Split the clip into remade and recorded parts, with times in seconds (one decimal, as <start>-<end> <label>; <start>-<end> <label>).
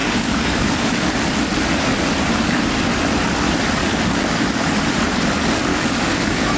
0.0-1.1 remade; 1.1-3.8 recorded; 3.8-4.7 remade; 4.7-5.7 recorded; 5.7-6.6 remade